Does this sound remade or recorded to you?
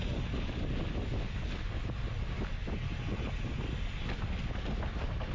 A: recorded